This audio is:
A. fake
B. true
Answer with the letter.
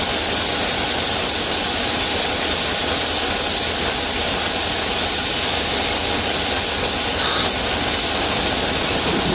B